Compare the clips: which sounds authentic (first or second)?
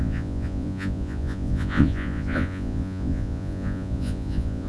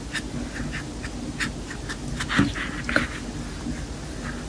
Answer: second